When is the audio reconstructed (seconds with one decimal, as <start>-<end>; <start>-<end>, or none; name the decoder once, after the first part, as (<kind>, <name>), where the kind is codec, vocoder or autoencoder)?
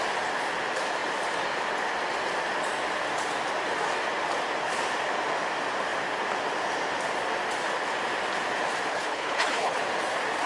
8.9-9.8 (codec, HILCodec)